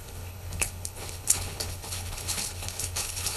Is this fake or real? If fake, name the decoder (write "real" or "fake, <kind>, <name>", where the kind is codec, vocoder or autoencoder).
fake, codec, HILCodec